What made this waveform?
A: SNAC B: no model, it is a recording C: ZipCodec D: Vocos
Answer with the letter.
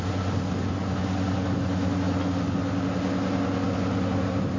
B